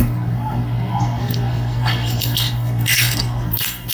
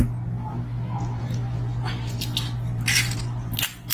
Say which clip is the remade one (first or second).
first